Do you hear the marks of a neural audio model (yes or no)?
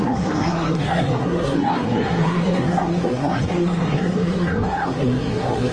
yes